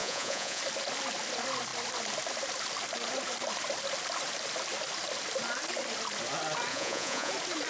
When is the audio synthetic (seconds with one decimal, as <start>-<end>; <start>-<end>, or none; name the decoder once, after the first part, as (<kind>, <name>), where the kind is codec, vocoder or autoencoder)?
0.0-0.6 (vocoder, Vocos); 6.7-7.3